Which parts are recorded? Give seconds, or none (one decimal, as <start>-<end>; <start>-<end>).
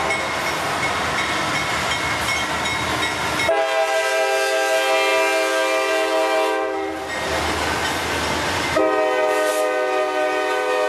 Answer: 0.0-10.9